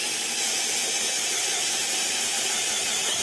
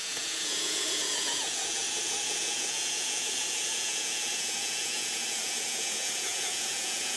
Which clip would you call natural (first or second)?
first